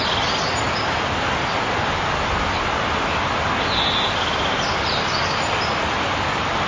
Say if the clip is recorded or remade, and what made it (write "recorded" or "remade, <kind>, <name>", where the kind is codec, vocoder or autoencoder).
recorded